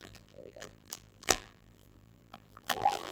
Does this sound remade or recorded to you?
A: remade